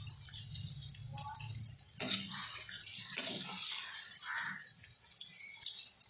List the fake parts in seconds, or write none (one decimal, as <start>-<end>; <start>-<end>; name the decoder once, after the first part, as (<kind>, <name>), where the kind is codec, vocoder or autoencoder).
none